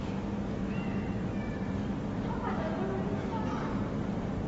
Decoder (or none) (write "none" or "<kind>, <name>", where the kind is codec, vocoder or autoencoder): none